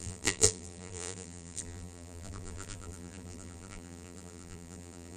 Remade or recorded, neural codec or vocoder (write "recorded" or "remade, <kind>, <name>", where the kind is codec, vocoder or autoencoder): remade, vocoder, BigVGAN v2